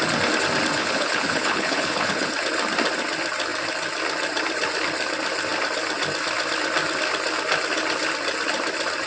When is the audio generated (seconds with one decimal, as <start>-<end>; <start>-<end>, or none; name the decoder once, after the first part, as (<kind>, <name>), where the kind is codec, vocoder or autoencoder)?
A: 0.8-2.3 (codec, HILCodec)